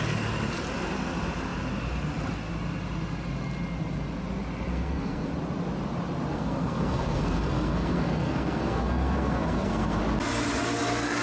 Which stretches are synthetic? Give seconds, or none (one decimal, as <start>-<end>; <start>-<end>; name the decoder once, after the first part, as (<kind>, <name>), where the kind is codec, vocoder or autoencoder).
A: 4.7-5.3 (codec, SNAC); 6.3-10.0

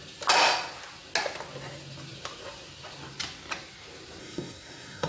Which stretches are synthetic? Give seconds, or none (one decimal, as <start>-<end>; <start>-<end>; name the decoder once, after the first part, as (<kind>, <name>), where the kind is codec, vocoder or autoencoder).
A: 4.2-5.1 (codec, SNAC)